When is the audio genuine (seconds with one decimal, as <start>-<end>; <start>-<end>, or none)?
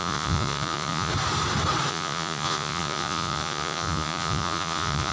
1.1-1.9